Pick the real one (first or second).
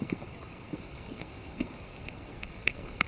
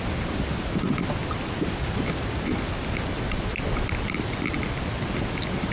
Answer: second